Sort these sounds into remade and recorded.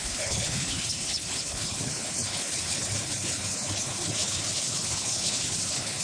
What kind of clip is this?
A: remade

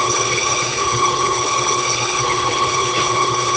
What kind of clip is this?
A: remade